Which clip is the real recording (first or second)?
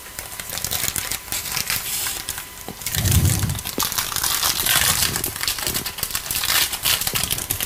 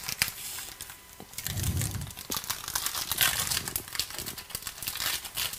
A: second